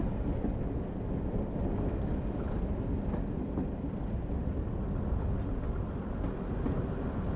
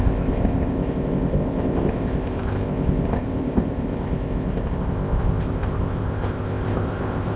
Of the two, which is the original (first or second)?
first